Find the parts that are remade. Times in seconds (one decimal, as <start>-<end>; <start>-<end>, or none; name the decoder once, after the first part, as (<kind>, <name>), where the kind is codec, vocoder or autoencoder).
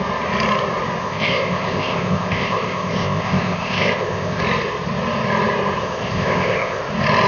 1.0-4.4 (codec, ZipCodec); 5.8-6.8